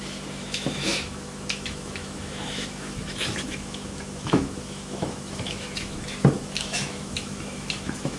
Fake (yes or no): yes